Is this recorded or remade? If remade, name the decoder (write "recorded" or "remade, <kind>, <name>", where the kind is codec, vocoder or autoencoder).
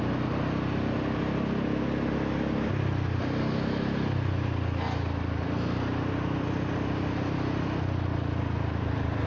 recorded